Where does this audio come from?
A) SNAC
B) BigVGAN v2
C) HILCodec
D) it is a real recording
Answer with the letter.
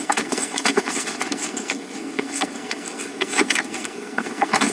A